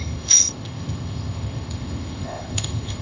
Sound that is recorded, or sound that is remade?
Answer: remade